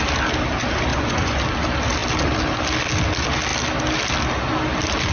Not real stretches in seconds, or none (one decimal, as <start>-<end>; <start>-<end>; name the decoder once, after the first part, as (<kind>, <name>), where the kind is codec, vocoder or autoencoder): 0.9-1.4 (vocoder, Vocos)